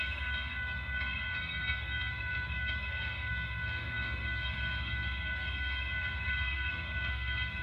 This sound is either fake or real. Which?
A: fake